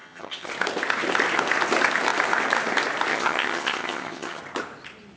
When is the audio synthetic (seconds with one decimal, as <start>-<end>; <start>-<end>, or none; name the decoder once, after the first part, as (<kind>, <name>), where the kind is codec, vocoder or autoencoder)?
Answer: 0.0-0.5 (vocoder, HiFi-GAN); 3.1-4.4